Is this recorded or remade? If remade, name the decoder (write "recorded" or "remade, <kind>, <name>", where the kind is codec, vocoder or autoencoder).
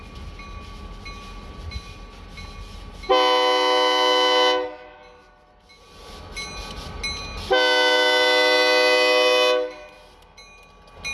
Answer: recorded